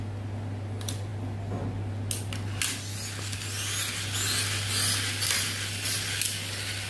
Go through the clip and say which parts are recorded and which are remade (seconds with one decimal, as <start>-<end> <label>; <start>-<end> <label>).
0.0-6.9 recorded